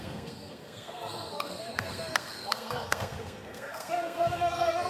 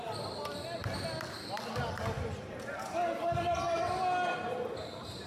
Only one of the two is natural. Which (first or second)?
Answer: second